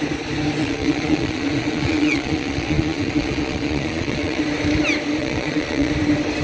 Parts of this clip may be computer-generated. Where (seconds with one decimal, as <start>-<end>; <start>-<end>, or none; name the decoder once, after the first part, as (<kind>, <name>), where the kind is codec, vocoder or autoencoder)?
0.6-4.4 (vocoder, Vocos); 5.2-5.9